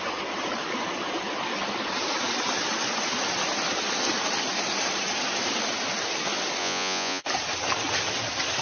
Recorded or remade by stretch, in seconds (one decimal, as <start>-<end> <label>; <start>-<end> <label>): 0.0-6.6 recorded; 6.6-7.2 remade; 7.2-8.6 recorded